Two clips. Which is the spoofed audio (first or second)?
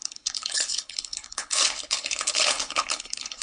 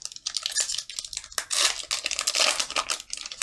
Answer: first